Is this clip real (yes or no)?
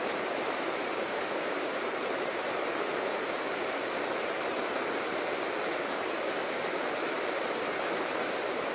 no